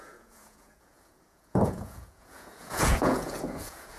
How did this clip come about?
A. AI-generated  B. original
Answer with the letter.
A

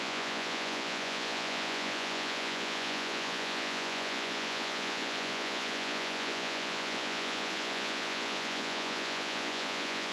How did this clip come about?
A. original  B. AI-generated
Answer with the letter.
B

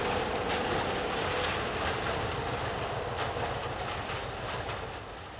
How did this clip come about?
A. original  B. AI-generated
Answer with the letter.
A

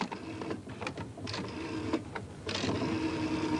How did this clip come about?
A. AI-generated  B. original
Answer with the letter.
B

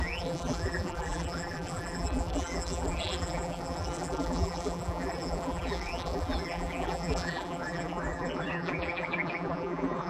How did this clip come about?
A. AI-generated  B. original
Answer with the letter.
A